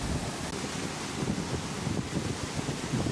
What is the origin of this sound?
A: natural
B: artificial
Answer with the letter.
A